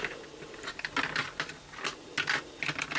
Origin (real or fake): real